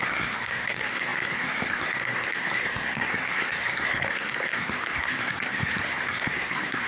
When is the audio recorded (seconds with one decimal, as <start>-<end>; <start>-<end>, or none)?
none